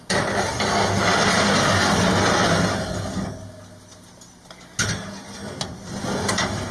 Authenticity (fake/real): real